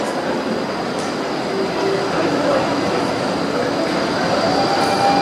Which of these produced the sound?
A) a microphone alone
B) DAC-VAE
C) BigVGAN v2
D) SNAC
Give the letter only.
A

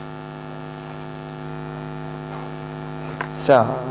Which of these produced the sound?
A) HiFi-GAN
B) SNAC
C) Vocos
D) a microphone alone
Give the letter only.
D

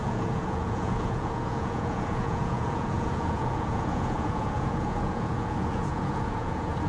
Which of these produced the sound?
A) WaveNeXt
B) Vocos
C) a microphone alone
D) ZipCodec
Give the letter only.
B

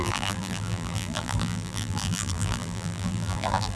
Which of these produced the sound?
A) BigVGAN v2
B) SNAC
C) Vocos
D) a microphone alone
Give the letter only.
A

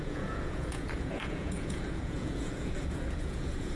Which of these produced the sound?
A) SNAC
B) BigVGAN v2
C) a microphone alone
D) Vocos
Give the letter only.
D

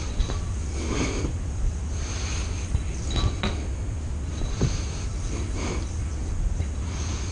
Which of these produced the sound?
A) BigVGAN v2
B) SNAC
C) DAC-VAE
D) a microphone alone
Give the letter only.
D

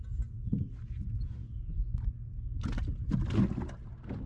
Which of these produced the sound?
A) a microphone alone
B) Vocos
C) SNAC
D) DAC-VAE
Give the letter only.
A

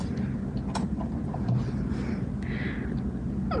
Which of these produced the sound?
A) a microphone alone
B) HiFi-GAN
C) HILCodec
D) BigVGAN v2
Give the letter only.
A